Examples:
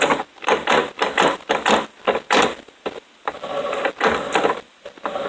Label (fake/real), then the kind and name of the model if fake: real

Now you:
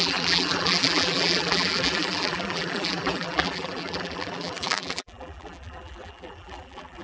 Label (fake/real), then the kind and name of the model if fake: fake, vocoder, BigVGAN v2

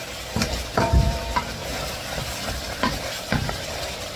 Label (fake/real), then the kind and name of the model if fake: fake, vocoder, BigVGAN v2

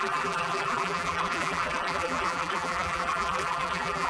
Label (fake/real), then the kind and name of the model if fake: fake, vocoder, BigVGAN v2